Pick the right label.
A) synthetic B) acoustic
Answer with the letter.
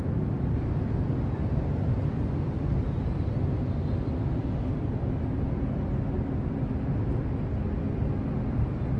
B